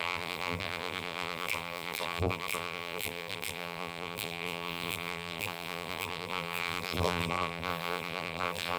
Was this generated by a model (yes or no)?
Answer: yes